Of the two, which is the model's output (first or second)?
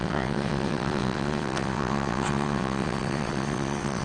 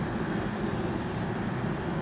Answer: first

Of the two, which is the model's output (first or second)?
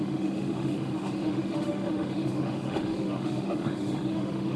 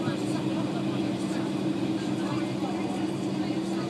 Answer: first